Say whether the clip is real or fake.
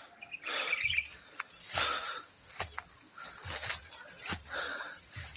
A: real